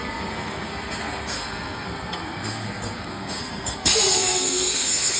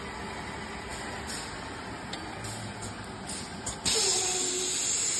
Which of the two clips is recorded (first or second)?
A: second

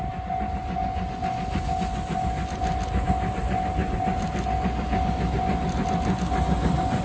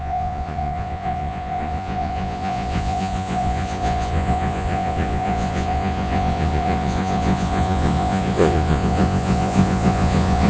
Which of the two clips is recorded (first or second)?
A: first